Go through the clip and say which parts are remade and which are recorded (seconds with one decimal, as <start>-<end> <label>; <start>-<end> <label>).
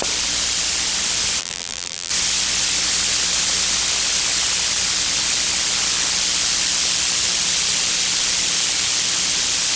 0.0-1.4 recorded; 1.4-2.1 remade; 2.1-9.7 recorded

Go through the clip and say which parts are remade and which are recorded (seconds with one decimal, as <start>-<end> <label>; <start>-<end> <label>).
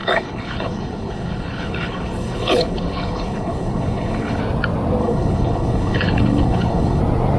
0.0-4.4 remade; 4.4-5.0 recorded; 5.0-7.0 remade; 7.0-7.4 recorded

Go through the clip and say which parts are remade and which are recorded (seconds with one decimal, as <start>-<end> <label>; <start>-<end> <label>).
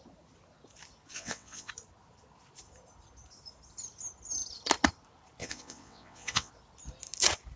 0.0-1.1 recorded; 1.1-1.7 remade; 1.7-5.4 recorded; 5.4-6.5 remade; 6.5-7.6 recorded